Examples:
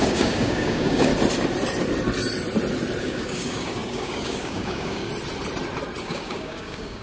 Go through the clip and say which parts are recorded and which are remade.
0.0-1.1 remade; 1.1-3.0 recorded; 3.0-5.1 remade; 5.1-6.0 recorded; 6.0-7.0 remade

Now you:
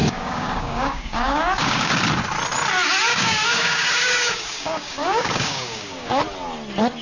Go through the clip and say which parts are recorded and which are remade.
0.0-1.9 remade; 1.9-3.1 recorded; 3.1-6.2 remade; 6.2-7.0 recorded

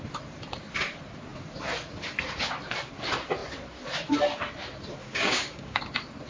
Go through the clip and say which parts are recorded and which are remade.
0.0-5.0 recorded; 5.0-5.8 remade; 5.8-6.3 recorded

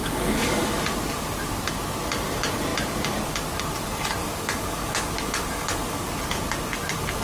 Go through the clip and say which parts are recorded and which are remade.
0.0-0.6 remade; 0.6-4.2 recorded; 4.2-6.1 remade; 6.1-7.2 recorded

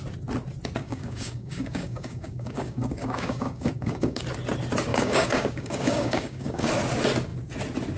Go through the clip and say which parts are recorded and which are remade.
0.0-0.8 recorded; 0.8-4.2 remade; 4.2-4.9 recorded; 4.9-6.7 remade; 6.7-8.0 recorded

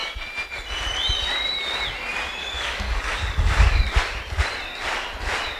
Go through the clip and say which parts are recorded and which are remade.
0.0-2.4 recorded; 2.4-3.8 remade; 3.8-5.6 recorded

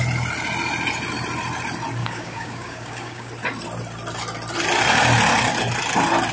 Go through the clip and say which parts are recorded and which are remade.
0.0-2.0 recorded; 2.0-3.3 remade; 3.3-6.3 recorded

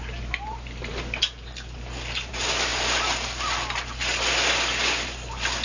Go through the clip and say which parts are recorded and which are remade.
0.0-5.6 recorded